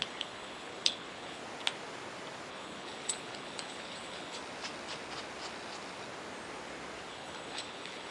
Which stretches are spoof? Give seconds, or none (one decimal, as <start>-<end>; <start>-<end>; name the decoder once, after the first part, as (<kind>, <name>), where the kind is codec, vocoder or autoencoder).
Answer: 0.0-1.4 (codec, HILCodec); 2.5-4.4; 7.1-8.1